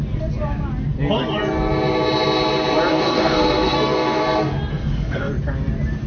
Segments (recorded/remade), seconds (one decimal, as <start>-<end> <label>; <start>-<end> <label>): 0.0-2.9 recorded; 2.9-4.2 remade; 4.2-4.7 recorded; 4.7-5.3 remade; 5.3-6.1 recorded